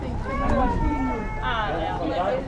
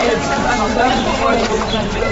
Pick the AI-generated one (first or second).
second